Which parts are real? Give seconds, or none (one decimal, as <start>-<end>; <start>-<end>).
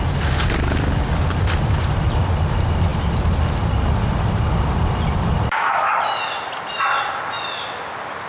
0.0-8.3